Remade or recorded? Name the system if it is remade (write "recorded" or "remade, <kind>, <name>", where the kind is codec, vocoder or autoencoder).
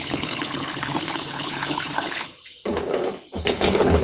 remade, codec, HILCodec